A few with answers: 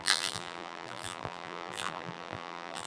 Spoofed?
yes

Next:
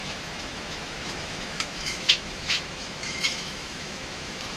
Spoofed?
yes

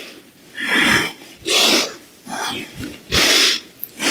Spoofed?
yes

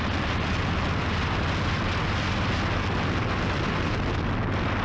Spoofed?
no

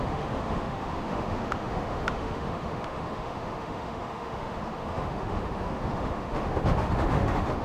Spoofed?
yes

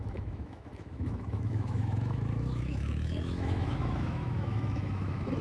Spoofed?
yes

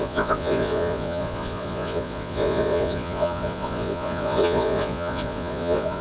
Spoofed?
yes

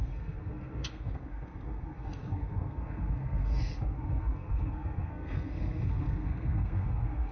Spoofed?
yes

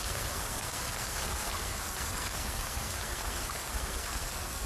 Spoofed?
yes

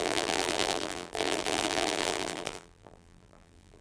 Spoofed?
yes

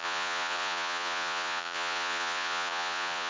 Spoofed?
yes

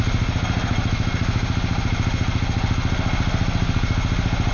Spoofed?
no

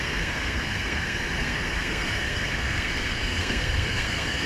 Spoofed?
yes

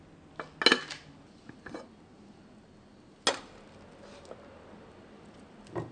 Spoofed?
no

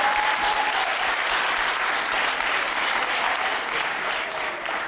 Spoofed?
no